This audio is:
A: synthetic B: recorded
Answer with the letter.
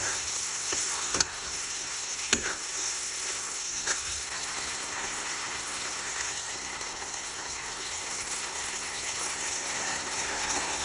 A